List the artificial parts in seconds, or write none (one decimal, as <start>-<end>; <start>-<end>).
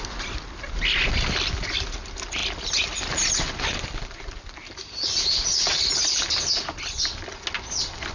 none